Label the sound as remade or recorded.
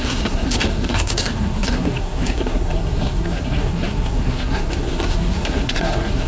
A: remade